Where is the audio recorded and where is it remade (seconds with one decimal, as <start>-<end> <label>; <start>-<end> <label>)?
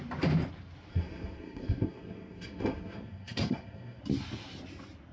0.0-0.9 recorded; 0.9-4.0 remade; 4.0-5.1 recorded